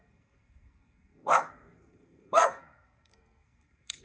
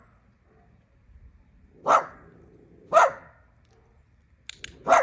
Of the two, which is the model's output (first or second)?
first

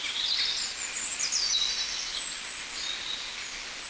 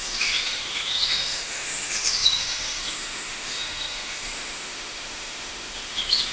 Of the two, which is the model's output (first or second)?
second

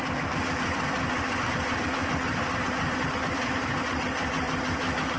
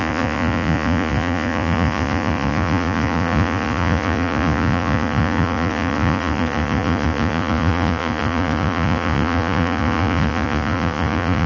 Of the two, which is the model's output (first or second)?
second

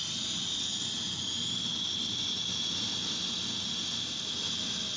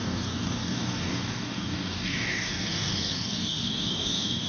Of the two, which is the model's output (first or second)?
second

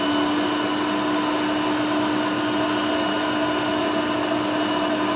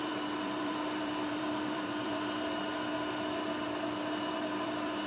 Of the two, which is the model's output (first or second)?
second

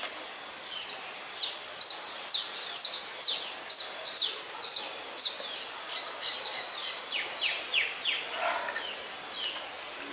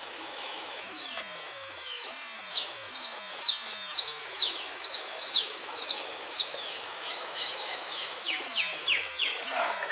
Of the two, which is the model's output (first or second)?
second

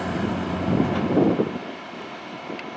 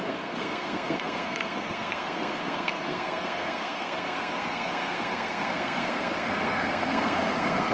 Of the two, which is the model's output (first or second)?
second